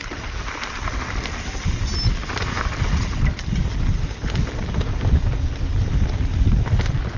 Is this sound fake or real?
real